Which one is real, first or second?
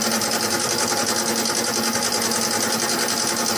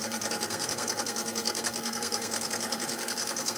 first